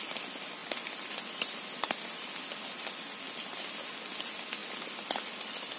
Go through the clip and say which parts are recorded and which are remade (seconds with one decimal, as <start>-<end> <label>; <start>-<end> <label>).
0.0-5.8 recorded